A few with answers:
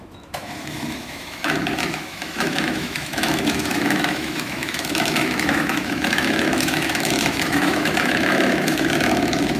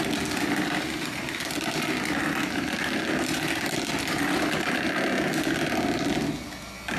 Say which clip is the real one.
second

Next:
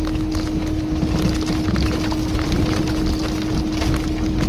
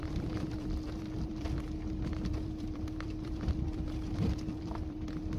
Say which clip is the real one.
first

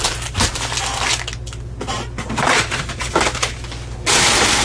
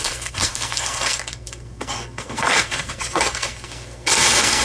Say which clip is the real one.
first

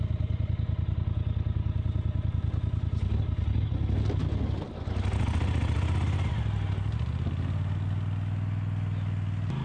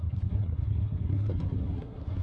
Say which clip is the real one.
first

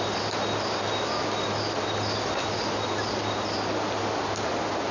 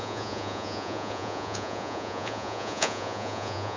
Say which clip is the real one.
first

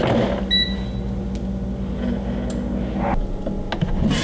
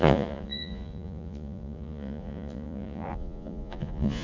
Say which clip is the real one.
first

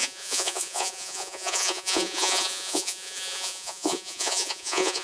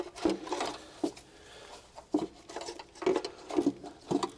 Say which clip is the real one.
second